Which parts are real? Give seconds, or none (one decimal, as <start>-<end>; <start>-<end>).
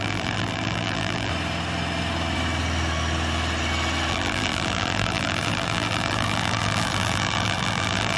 1.3-4.1